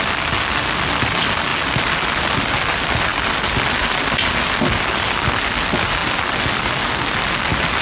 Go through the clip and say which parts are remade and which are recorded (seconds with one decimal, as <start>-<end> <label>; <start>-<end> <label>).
0.0-7.8 recorded